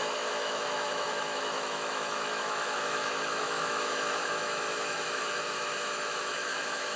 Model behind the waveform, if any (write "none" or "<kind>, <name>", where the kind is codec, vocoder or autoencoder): autoencoder, DAC-VAE